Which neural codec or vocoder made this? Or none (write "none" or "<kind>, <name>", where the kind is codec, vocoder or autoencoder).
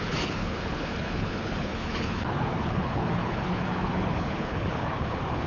codec, HILCodec